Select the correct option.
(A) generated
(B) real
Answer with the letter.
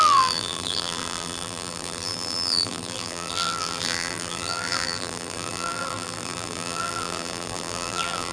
A